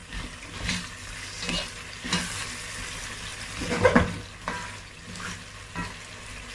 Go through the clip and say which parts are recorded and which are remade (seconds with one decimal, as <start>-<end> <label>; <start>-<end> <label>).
0.0-3.3 recorded; 3.3-4.8 remade; 4.8-6.5 recorded